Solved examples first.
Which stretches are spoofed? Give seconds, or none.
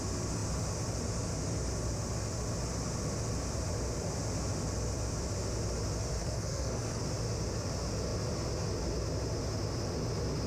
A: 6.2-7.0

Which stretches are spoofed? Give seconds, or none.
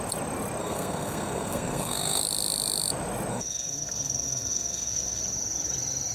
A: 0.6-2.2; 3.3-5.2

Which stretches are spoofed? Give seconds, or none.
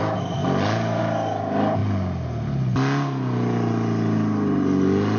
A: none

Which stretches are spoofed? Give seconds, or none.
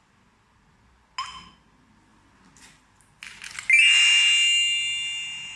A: none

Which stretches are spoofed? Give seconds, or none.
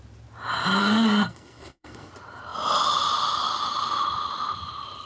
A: 0.8-2.1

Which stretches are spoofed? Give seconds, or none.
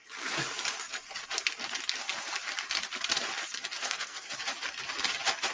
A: 3.8-4.3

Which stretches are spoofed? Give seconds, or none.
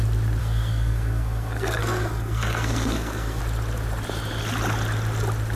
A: 0.4-3.4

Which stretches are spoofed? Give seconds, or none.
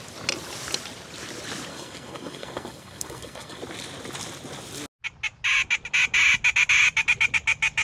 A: 1.7-3.6